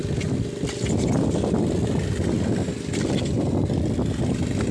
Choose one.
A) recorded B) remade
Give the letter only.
A